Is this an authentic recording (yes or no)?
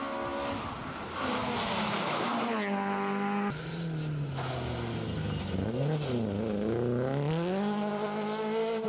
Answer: yes